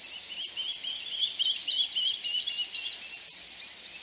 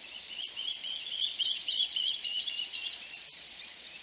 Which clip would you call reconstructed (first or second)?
second